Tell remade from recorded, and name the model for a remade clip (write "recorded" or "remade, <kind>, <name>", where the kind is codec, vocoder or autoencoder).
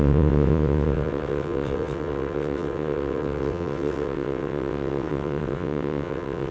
remade, vocoder, WaveNeXt